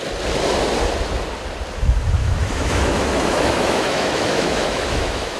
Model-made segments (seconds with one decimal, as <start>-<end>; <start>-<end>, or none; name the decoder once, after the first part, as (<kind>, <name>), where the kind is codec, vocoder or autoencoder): 2.2-5.4 (autoencoder, DAC-VAE)